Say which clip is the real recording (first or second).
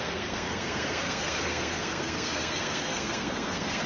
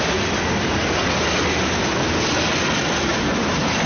second